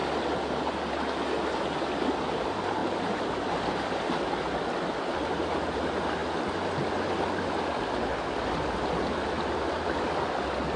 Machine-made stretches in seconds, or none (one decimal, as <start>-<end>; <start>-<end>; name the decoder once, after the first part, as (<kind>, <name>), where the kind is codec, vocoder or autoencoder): none